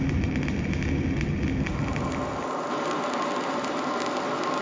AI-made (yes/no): no